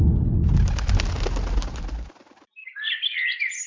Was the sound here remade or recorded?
recorded